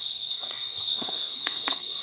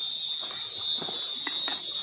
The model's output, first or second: first